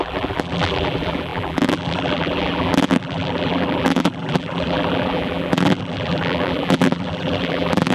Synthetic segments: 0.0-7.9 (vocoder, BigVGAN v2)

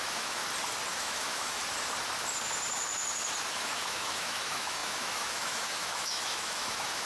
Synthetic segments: 0.0-0.4 (autoencoder, DAC-VAE); 0.9-1.6; 3.5-7.1

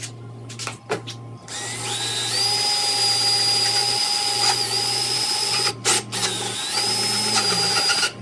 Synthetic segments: 3.8-5.7 (vocoder, Vocos)

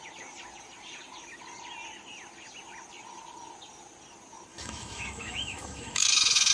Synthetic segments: 4.5-6.5 (autoencoder, DAC-VAE)

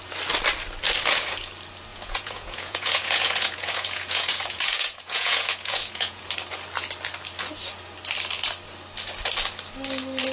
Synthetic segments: 1.9-6.2 (vocoder, Vocos)

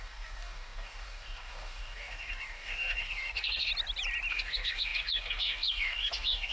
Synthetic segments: 0.0-3.7 (codec, DAC); 4.3-6.5

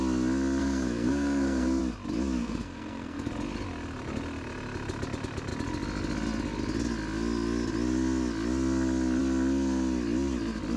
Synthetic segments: 0.6-1.8 (codec, SNAC); 2.4-3.3